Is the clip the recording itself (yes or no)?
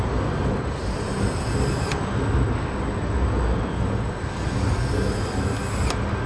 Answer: yes